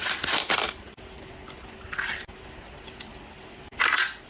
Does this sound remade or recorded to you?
recorded